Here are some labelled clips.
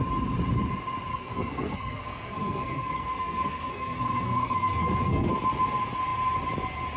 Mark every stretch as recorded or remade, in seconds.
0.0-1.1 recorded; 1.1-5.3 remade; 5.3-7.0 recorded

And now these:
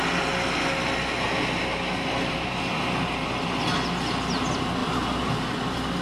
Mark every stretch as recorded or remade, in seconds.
0.0-6.0 recorded

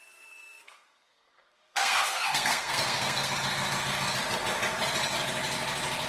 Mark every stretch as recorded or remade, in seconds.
0.0-3.3 remade; 3.3-6.1 recorded

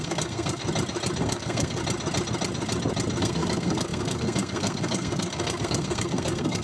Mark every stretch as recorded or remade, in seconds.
0.0-0.6 remade; 0.6-1.2 recorded; 1.2-1.8 remade; 1.8-3.2 recorded; 3.2-6.6 remade